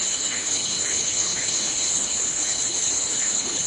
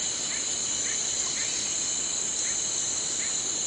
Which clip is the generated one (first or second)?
first